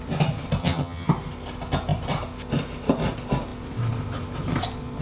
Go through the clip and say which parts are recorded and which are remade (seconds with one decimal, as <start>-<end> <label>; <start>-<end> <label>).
0.0-0.6 recorded; 0.6-1.1 remade; 1.1-5.0 recorded